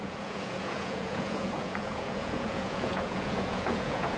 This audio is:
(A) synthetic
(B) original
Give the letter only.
A